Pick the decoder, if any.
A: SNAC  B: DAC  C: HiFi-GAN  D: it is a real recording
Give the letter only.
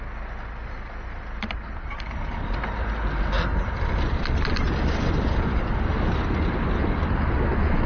D